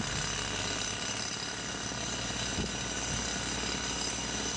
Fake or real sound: real